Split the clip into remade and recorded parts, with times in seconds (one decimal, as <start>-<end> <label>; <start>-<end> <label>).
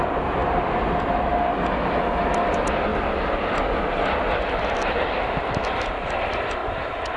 0.0-0.4 recorded; 0.4-1.3 remade; 1.3-6.6 recorded; 6.6-7.2 remade